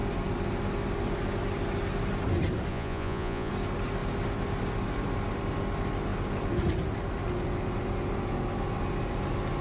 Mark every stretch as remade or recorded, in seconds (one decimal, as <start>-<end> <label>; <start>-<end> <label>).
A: 0.0-2.7 recorded; 2.7-3.5 remade; 3.5-9.6 recorded